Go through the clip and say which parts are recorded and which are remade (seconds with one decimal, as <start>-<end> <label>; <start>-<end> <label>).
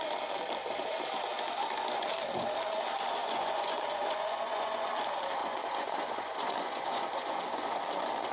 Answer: 0.0-3.2 recorded; 3.2-4.9 remade; 4.9-5.4 recorded; 5.4-7.8 remade; 7.8-8.3 recorded